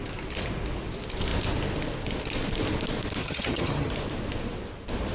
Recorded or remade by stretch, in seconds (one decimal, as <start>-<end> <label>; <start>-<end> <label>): 0.0-3.2 recorded; 3.2-3.9 remade; 3.9-5.1 recorded